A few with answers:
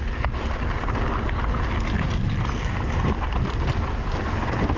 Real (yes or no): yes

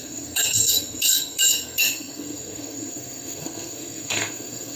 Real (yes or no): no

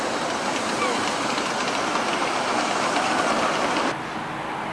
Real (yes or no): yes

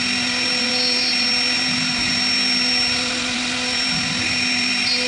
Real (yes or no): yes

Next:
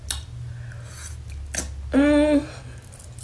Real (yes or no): yes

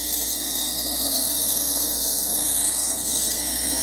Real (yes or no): no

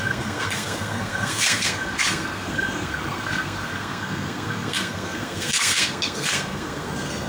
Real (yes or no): no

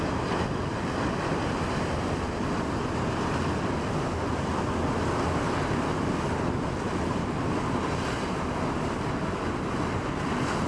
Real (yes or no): yes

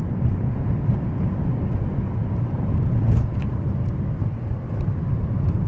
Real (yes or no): yes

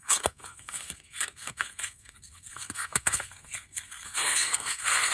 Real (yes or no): no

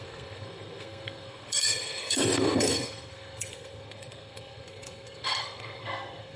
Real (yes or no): no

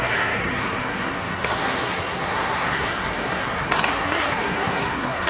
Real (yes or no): no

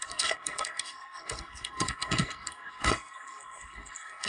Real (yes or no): no